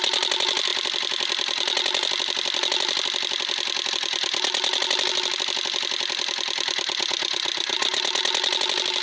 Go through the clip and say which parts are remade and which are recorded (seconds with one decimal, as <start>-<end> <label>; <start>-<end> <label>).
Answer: 0.0-9.0 recorded

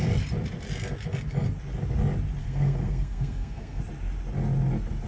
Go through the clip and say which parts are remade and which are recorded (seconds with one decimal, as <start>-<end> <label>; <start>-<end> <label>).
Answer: 0.0-2.4 recorded; 2.4-3.8 remade; 3.8-5.1 recorded

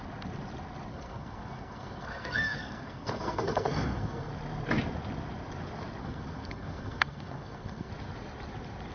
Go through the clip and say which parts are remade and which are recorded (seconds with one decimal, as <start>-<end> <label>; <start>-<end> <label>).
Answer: 0.0-0.9 recorded; 0.9-4.3 remade; 4.3-6.0 recorded; 6.0-7.9 remade; 7.9-8.9 recorded

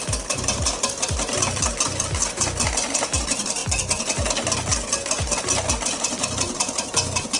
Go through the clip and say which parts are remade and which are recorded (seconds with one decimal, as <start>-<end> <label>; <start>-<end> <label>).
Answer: 0.0-2.2 remade; 2.2-2.9 recorded; 2.9-3.6 remade; 3.6-5.7 recorded; 5.7-7.4 remade